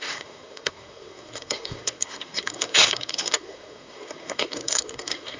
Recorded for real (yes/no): no